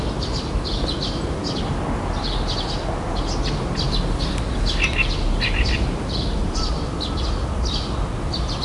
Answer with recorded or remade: recorded